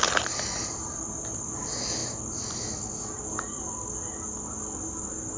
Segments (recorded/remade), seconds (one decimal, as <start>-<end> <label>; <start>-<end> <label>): 0.0-5.4 recorded